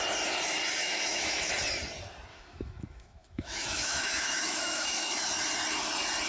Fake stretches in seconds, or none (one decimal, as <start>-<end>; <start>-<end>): 0.8-1.5; 2.3-5.1